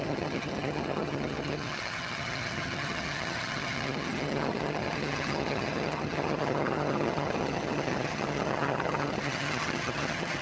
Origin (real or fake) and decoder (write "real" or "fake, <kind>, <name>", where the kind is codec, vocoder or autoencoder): fake, vocoder, HiFi-GAN